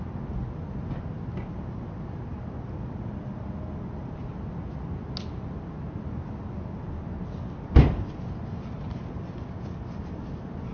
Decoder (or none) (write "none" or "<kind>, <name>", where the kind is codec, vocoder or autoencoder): none